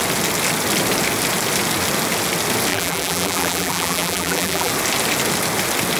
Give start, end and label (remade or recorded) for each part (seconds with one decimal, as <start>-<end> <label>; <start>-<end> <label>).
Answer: 0.0-2.7 recorded; 2.7-4.7 remade; 4.7-6.0 recorded